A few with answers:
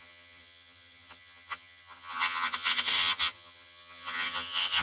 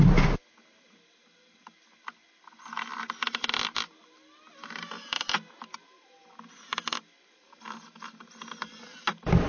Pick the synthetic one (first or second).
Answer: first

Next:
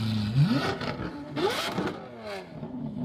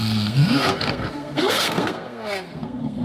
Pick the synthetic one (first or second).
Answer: second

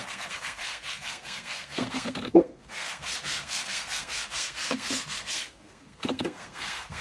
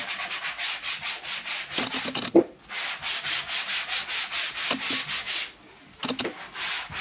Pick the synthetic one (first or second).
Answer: first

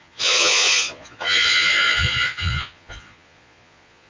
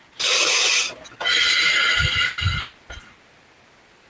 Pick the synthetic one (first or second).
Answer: first